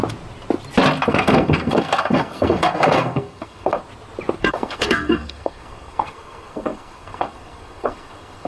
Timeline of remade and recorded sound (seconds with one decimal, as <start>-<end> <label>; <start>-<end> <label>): 0.0-1.1 recorded; 1.1-3.8 remade; 3.8-4.4 recorded; 4.4-8.5 remade